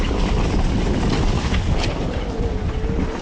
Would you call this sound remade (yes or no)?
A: no